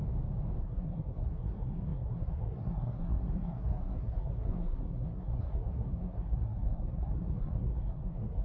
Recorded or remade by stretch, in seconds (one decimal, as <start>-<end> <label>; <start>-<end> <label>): 0.0-0.6 recorded; 0.6-8.4 remade